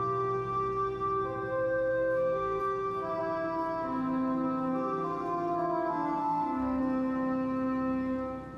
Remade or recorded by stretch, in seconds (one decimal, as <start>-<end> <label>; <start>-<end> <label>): 0.0-1.9 recorded; 1.9-2.6 remade; 2.6-6.2 recorded; 6.2-6.8 remade; 6.8-8.6 recorded